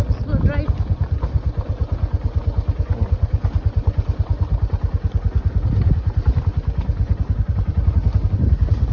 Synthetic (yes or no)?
no